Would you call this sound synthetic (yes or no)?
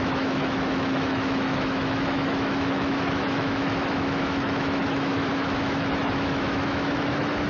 yes